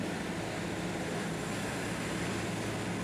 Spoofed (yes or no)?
no